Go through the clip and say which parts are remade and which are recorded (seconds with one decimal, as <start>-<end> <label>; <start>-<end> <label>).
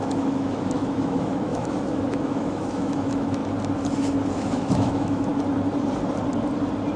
0.0-3.4 remade; 3.4-4.3 recorded; 4.3-5.3 remade; 5.3-7.0 recorded